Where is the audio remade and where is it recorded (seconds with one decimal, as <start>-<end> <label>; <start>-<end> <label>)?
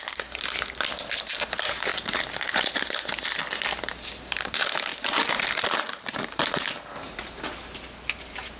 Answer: 0.0-1.9 recorded; 1.9-2.7 remade; 2.7-4.9 recorded; 4.9-7.2 remade; 7.2-8.6 recorded